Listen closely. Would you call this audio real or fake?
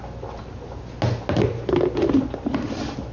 real